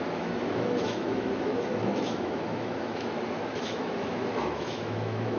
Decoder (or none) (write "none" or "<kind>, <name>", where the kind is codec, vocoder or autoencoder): autoencoder, DAC-VAE